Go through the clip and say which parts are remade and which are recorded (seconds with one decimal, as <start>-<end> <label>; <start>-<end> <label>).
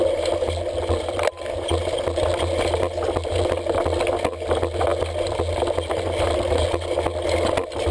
0.0-7.9 recorded